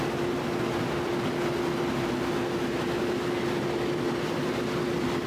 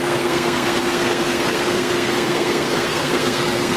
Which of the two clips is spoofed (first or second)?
second